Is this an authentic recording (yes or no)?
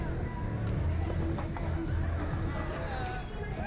yes